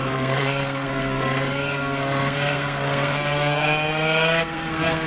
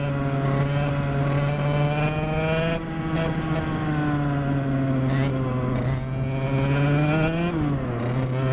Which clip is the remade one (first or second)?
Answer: first